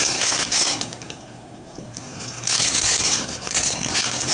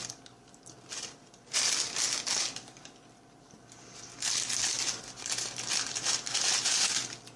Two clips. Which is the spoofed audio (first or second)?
first